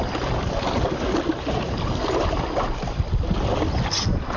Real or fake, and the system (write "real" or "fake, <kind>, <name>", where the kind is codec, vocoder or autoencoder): real